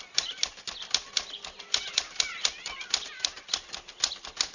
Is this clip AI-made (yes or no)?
no